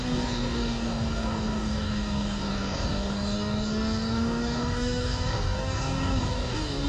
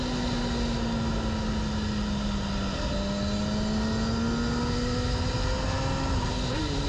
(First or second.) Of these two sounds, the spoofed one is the first